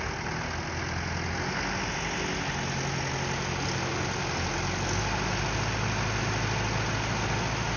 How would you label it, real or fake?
real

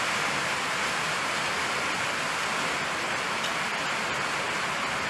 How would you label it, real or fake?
real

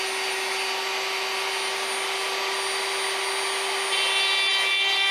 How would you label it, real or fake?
real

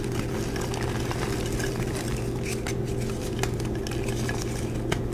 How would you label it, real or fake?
real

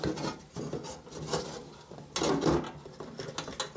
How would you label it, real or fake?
real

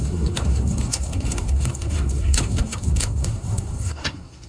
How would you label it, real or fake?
fake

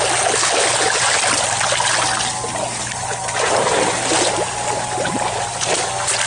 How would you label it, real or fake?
real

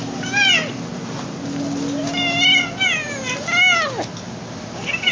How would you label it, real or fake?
real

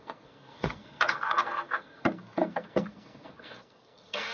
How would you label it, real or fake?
fake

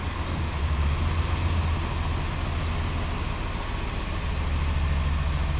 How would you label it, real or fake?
real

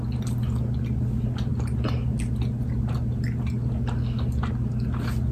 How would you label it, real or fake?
real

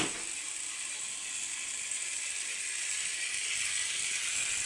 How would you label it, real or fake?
real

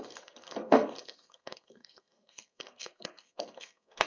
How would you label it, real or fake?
fake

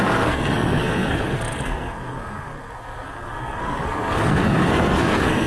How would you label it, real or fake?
fake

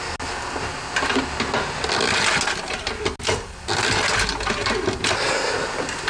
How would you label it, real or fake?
real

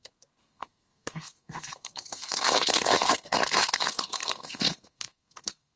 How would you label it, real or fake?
fake